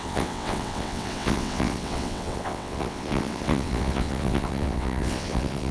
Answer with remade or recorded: remade